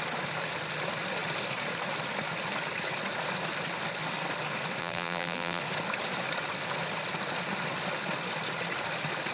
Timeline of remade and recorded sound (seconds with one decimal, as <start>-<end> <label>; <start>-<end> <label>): 0.0-4.8 recorded; 4.8-5.6 remade; 5.6-9.3 recorded